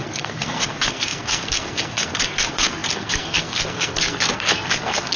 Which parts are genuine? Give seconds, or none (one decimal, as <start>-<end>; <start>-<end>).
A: none